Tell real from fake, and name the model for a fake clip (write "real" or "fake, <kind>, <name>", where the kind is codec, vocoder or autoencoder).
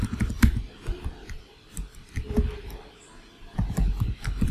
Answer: real